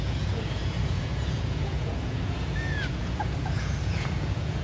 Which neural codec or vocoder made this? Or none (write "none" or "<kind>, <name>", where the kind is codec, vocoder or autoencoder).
vocoder, Vocos